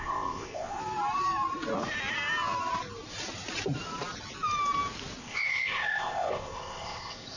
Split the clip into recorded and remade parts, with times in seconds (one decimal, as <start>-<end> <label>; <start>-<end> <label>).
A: 0.0-0.8 remade; 0.8-5.2 recorded; 5.2-7.4 remade